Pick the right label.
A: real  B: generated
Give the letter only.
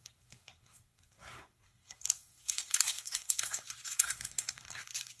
B